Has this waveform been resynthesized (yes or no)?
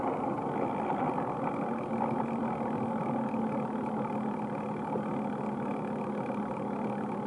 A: no